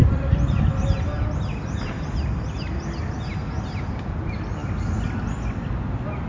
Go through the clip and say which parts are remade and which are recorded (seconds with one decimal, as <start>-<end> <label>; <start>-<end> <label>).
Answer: 0.0-6.3 recorded